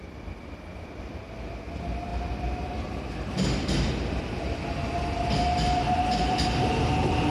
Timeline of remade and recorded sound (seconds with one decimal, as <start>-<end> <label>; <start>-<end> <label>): 0.0-7.3 recorded

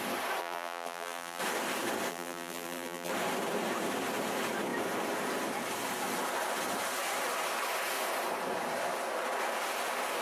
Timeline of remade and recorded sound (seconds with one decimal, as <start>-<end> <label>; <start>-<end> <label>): 0.0-0.4 recorded; 0.4-1.4 remade; 1.4-2.1 recorded; 2.1-3.1 remade; 3.1-10.2 recorded